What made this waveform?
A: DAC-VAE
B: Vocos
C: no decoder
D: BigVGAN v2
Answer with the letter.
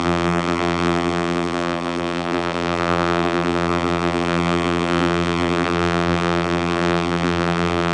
D